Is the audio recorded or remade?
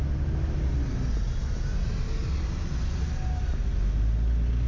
recorded